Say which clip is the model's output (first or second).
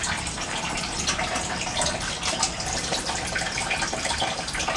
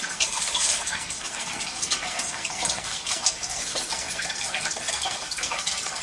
second